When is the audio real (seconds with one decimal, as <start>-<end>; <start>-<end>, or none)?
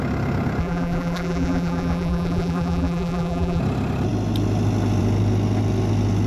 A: 0.0-0.6; 3.6-6.3